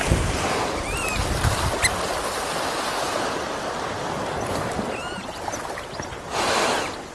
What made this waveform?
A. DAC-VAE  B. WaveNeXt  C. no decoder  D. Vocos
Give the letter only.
C